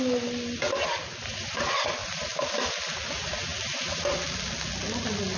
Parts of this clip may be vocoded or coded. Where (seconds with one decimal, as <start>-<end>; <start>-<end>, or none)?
none

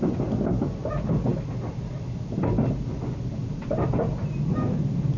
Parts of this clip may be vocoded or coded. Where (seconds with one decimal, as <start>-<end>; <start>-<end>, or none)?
3.4-4.1

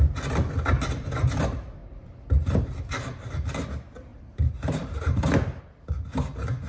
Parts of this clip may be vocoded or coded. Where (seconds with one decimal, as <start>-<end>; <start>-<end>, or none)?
1.8-2.7; 4.1-5.6